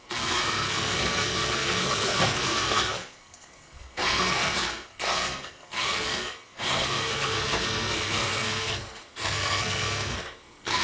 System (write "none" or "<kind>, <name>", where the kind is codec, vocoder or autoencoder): codec, SNAC